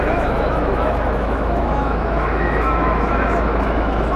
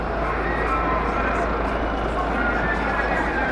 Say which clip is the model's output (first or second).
first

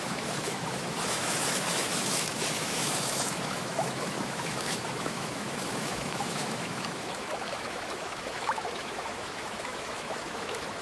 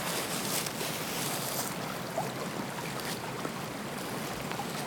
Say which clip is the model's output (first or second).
first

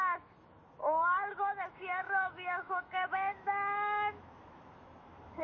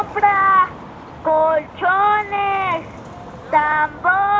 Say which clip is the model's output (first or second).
first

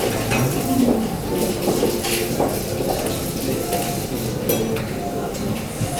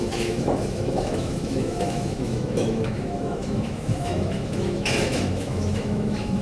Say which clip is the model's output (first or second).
second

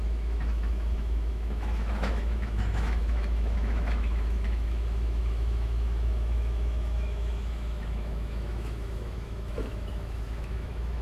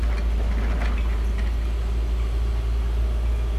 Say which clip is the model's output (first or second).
first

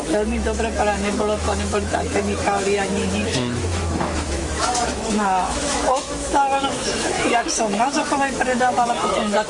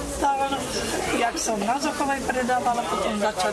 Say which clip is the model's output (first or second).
first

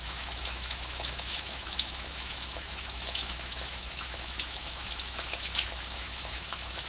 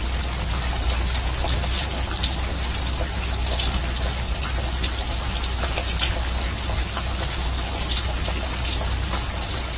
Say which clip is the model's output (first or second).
first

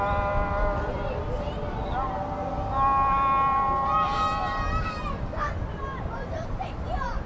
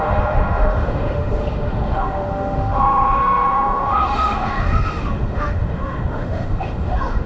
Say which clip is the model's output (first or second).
second